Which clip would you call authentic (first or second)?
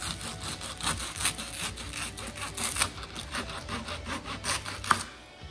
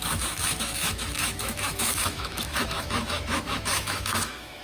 first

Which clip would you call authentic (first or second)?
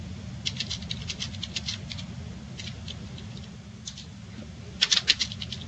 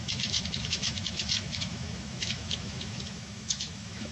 first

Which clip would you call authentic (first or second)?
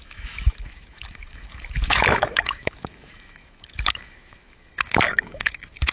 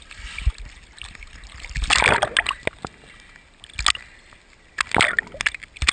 second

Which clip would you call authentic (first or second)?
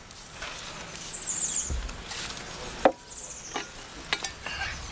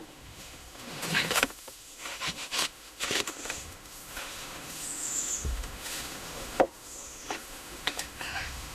first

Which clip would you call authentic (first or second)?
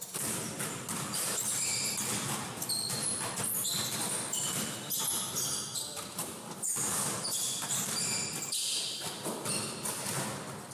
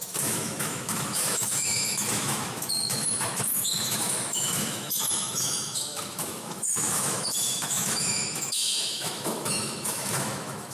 first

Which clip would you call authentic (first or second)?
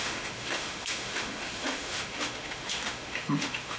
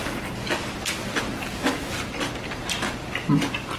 second